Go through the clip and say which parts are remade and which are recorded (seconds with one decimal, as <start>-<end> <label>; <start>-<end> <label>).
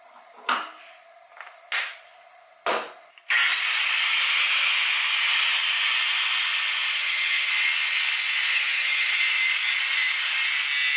0.0-6.9 recorded; 6.9-7.5 remade; 7.5-8.5 recorded; 8.5-9.2 remade; 9.2-11.0 recorded